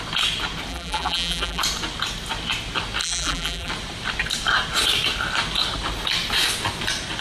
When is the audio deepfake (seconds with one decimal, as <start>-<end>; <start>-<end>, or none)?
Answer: 0.7-1.6; 3.0-3.7